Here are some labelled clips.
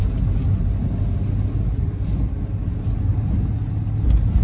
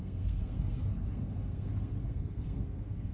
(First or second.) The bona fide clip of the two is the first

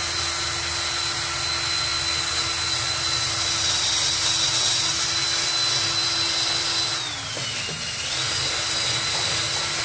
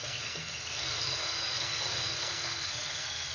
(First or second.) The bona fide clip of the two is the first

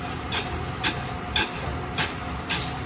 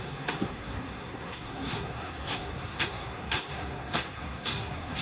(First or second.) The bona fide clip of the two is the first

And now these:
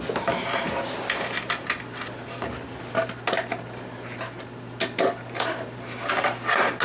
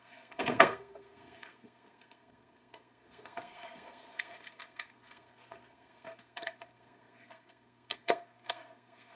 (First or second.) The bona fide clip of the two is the first